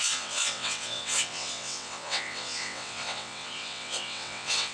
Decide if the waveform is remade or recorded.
remade